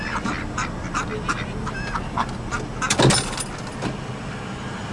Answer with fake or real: real